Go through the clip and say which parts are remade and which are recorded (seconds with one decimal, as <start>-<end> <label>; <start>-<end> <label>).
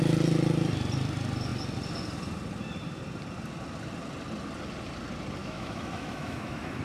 0.0-5.4 recorded; 5.4-6.8 remade